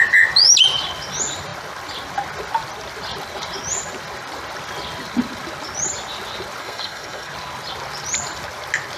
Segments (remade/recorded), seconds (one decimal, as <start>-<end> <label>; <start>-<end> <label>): 0.0-6.6 recorded; 6.6-7.3 remade; 7.3-9.0 recorded